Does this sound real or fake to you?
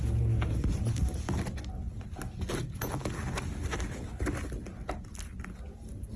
real